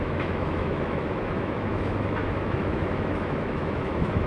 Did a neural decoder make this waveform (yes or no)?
yes